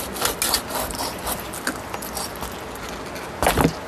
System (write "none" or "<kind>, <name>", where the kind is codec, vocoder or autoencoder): none